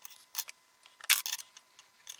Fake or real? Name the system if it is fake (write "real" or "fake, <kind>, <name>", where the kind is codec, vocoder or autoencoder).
real